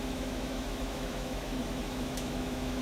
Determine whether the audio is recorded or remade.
remade